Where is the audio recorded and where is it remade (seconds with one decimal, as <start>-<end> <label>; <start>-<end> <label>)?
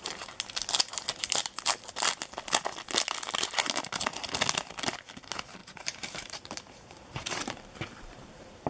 0.0-5.6 recorded; 5.6-8.7 remade